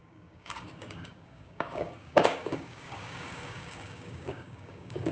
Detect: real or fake fake